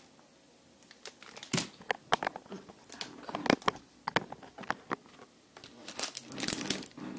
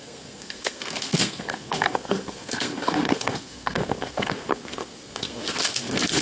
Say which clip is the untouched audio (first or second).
first